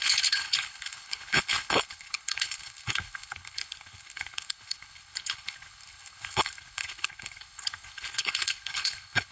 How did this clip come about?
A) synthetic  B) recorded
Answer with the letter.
A